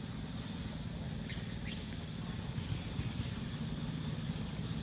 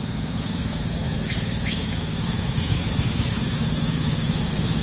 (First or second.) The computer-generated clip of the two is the second